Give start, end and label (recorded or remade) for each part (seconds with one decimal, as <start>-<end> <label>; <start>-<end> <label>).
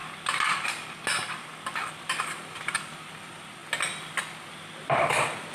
0.0-2.1 recorded; 2.1-3.6 remade; 3.6-4.7 recorded; 4.7-5.5 remade